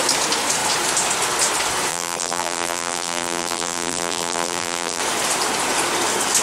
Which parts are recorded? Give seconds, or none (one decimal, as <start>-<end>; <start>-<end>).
0.0-1.9; 5.0-6.4